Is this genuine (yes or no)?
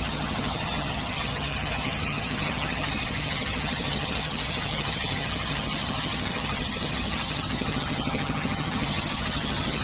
no